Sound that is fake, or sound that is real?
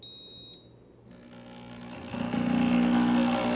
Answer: real